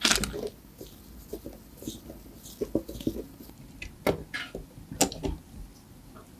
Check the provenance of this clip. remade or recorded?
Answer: recorded